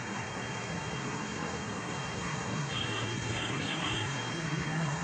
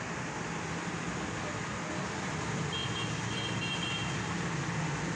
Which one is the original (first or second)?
second